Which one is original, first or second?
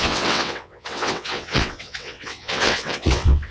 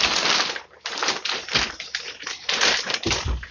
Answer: second